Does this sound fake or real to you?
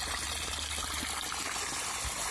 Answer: real